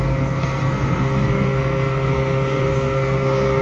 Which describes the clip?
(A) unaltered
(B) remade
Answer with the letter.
B